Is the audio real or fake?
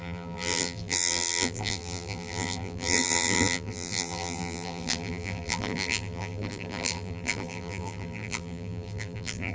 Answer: fake